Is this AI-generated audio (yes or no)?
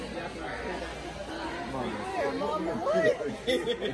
no